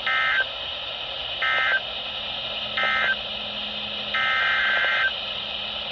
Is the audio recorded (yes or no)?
yes